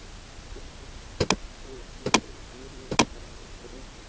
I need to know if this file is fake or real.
real